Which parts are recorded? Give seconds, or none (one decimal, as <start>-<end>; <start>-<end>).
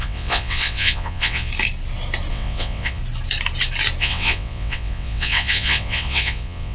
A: 1.5-2.3; 3.0-4.0